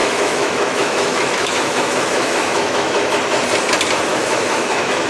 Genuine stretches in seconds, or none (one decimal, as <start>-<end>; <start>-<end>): 3.1-4.1